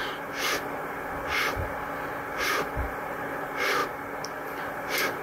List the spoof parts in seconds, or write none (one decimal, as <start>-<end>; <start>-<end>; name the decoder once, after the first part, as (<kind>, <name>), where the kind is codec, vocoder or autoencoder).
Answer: 0.0-5.2 (vocoder, BigVGAN v2)